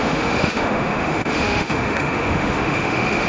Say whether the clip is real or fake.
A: fake